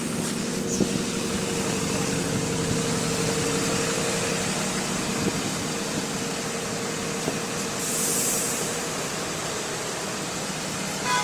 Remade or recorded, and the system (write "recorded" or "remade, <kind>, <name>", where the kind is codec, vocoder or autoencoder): recorded